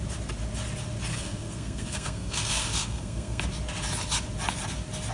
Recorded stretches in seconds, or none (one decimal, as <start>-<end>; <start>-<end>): 0.0-1.1; 3.4-5.1